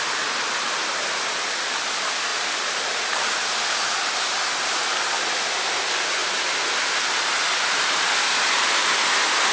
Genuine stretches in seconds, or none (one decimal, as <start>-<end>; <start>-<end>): 0.0-2.3; 3.5-9.5